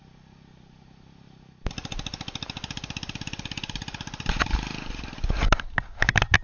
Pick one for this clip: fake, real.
real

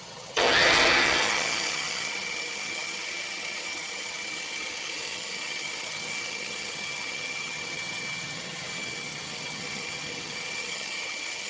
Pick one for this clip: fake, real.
fake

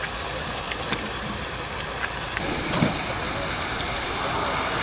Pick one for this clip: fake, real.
real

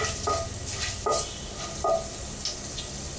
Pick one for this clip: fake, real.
real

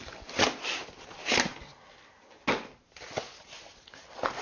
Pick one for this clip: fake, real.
real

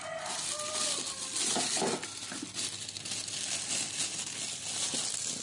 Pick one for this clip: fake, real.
real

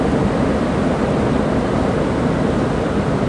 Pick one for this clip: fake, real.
real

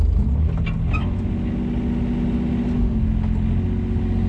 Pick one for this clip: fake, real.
real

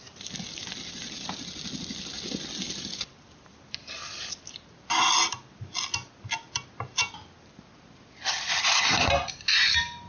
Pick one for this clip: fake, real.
real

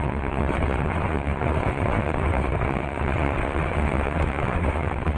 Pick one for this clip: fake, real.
fake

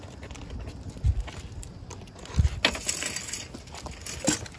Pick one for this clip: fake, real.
real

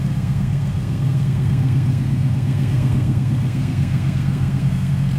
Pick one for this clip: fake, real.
fake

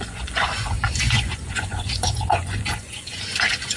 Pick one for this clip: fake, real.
fake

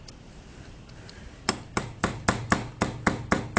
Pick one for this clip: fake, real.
real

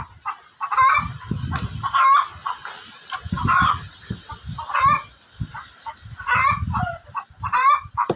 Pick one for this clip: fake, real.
real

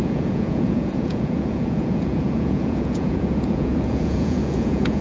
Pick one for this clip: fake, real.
fake